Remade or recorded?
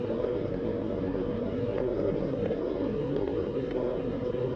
remade